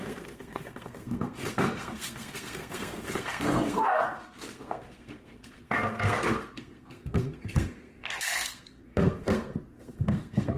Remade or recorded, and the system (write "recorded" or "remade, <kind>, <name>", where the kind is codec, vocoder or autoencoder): remade, codec, SNAC